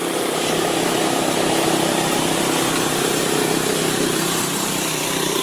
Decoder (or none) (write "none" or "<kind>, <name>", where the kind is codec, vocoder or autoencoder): vocoder, BigVGAN v2